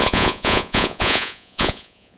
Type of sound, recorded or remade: remade